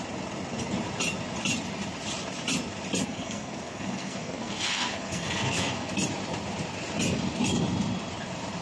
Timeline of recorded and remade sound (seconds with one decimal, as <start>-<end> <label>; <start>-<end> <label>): 0.0-3.0 recorded; 3.0-5.9 remade; 5.9-8.6 recorded